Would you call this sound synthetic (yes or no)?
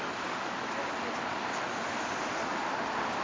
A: no